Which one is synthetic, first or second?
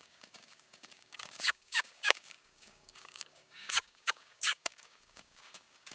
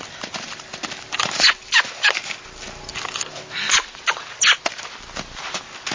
first